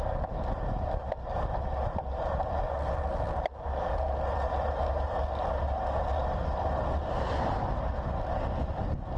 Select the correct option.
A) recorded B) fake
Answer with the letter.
A